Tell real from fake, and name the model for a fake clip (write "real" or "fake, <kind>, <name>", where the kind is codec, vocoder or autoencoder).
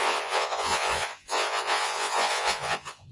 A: fake, vocoder, Vocos